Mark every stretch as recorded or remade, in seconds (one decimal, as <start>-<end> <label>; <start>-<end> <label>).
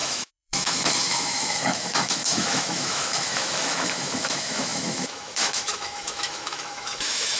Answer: 0.0-7.4 remade